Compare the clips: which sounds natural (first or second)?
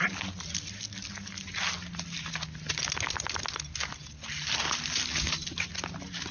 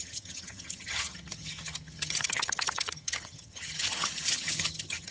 first